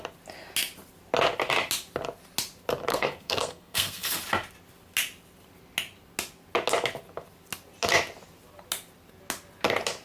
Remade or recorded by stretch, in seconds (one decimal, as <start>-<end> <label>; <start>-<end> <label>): 0.0-2.9 recorded; 2.9-4.2 remade; 4.2-10.0 recorded